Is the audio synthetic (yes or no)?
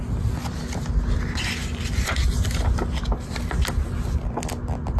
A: no